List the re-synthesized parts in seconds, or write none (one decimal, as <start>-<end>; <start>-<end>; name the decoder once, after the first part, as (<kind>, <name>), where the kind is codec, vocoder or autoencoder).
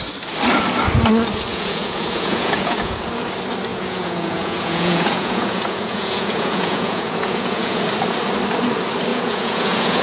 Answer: 1.5-3.0 (vocoder, Vocos); 3.7-7.8; 9.1-10.0